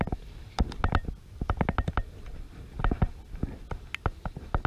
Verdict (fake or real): real